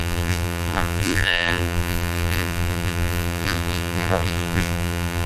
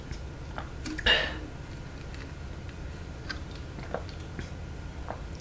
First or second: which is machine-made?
first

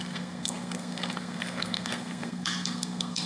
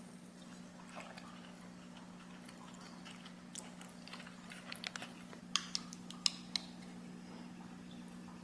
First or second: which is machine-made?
first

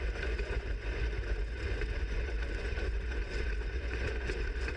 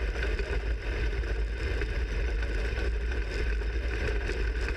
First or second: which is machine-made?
first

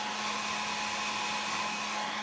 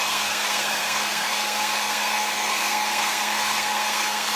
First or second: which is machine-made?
second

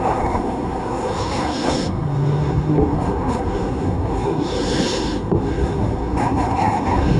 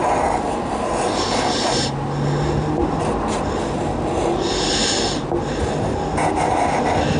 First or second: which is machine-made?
first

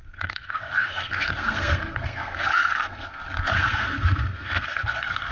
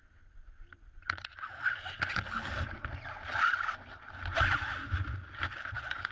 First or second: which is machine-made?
first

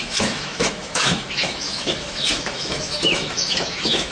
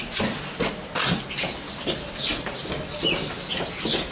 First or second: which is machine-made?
first